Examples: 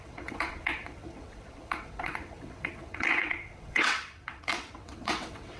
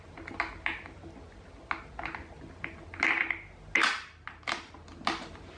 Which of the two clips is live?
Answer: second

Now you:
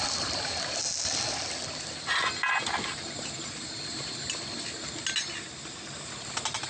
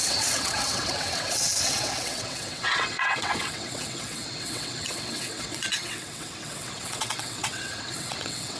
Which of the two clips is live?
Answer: first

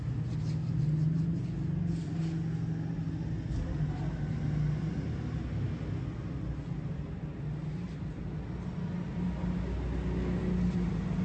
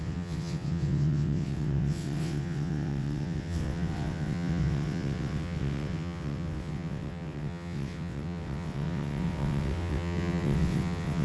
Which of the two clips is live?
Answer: first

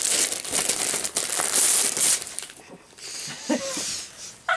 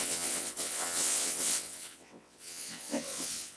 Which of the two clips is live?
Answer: first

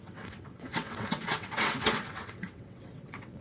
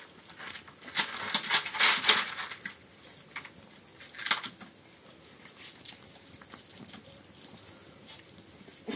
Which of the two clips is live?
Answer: second